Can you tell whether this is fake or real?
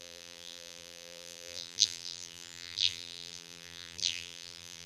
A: fake